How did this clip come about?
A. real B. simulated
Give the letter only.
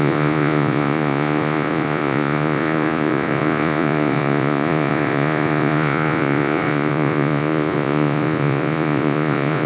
B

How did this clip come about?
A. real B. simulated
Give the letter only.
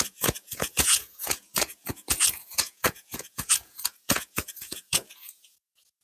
B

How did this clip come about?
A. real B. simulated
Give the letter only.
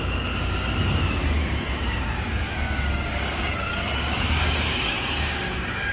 B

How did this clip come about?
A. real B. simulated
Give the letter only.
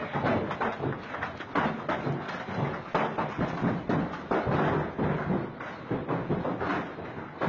A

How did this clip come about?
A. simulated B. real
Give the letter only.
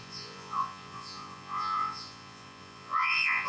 A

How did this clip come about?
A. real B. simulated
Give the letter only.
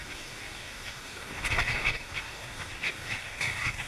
B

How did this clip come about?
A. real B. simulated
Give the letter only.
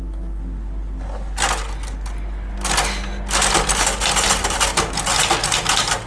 A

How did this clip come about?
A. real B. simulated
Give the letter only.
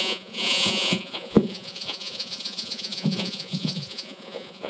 B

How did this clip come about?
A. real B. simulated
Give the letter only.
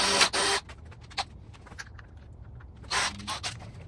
A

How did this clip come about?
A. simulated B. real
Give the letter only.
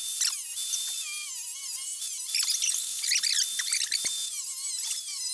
B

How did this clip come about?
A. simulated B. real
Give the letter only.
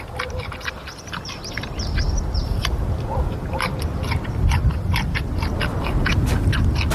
B